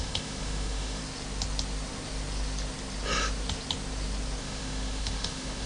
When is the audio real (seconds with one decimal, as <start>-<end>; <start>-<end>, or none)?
1.0-4.4